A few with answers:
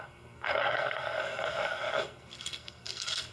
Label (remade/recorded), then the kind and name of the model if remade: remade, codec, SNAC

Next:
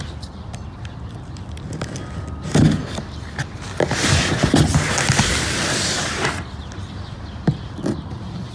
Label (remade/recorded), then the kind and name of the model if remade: recorded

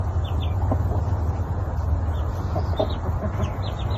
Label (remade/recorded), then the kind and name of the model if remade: recorded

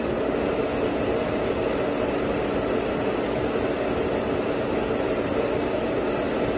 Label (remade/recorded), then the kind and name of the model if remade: recorded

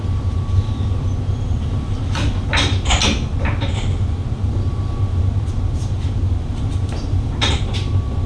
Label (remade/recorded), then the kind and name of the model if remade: recorded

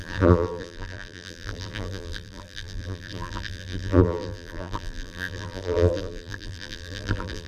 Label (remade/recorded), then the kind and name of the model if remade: remade, vocoder, BigVGAN v2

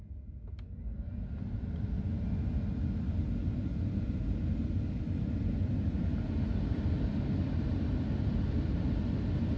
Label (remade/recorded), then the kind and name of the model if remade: recorded